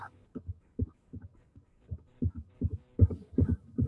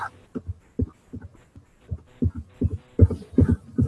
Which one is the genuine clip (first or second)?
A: second